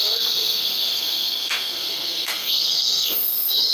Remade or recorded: remade